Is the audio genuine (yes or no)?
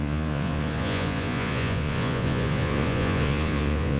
no